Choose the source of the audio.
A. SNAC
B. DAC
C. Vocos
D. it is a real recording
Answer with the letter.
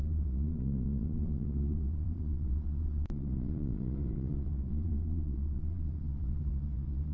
C